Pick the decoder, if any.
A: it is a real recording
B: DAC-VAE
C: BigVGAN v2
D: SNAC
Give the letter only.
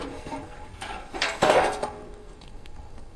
D